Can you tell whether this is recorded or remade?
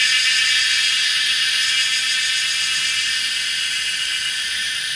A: recorded